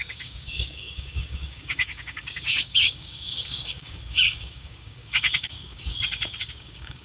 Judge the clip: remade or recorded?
remade